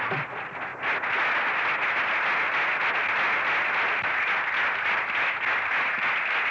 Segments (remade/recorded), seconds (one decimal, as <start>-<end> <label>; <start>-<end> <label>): 0.0-6.5 recorded